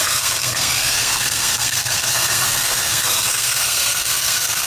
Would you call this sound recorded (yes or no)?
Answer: no